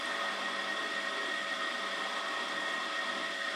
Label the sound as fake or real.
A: real